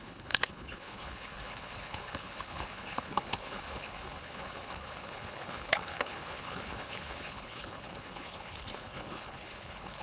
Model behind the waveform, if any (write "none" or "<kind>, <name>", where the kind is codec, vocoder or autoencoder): codec, HILCodec